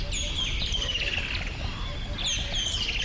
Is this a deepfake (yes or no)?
no